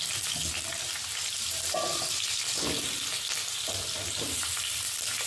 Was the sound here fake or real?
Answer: real